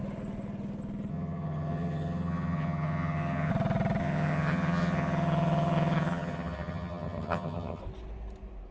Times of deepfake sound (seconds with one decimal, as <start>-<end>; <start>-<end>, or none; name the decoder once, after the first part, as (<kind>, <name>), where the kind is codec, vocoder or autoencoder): 1.1-3.5 (vocoder, HiFi-GAN); 4.0-7.8